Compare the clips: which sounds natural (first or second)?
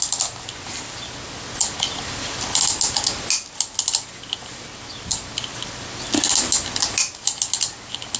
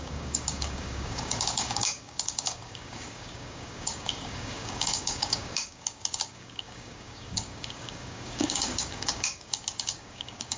first